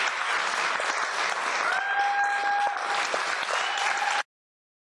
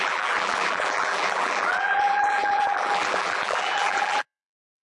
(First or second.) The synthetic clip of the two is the second